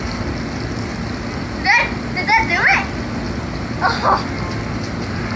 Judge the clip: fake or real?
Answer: real